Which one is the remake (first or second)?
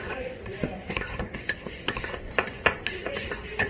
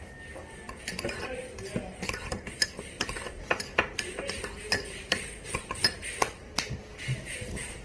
first